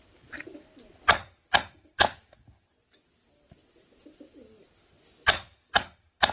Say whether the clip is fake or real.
real